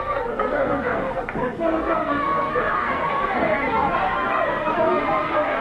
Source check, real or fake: fake